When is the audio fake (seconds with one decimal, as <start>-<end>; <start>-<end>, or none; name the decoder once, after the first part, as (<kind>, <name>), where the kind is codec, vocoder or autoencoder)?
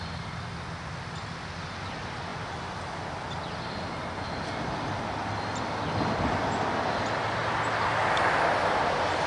none